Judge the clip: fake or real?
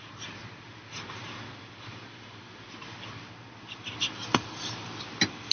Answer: real